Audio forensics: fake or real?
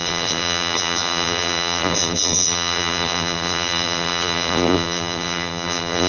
fake